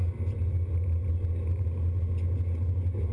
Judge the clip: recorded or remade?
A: recorded